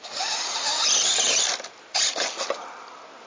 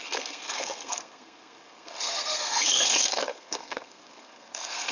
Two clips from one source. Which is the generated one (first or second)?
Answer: second